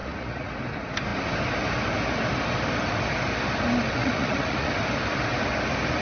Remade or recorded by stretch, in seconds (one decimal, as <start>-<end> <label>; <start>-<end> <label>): 0.0-0.5 remade; 0.5-4.0 recorded; 4.0-4.7 remade; 4.7-6.0 recorded